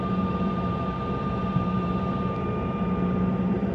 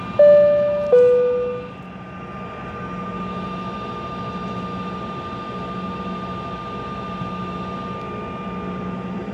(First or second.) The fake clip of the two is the first